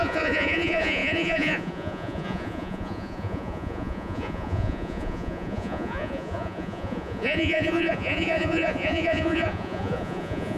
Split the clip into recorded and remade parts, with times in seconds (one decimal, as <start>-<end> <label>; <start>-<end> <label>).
0.0-10.6 remade